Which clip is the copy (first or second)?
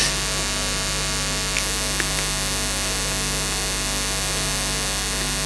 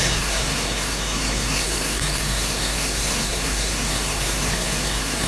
second